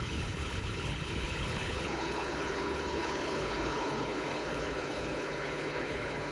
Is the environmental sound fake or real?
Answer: fake